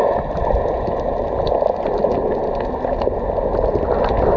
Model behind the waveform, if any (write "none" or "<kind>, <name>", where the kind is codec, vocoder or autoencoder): none